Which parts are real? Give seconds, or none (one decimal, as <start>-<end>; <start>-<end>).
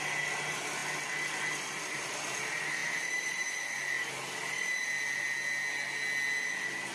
0.0-6.9